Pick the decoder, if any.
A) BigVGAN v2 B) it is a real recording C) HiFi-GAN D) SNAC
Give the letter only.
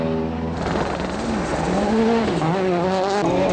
B